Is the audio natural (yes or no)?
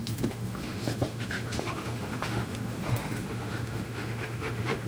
no